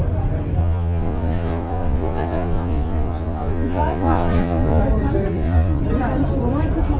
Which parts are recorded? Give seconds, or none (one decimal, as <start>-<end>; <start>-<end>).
0.0-0.6; 4.8-5.3; 5.8-7.0